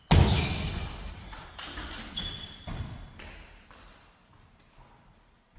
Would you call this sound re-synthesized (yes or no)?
no